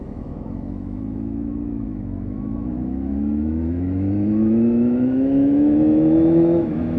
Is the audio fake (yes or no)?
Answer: yes